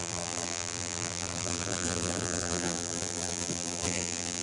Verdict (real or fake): fake